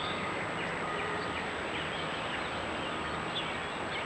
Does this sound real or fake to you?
real